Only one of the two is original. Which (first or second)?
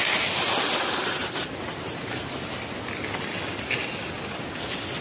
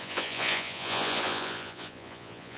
first